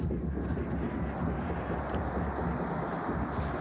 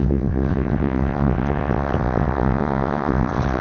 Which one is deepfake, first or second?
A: second